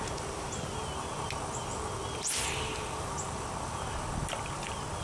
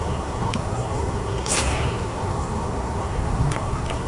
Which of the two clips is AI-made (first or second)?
second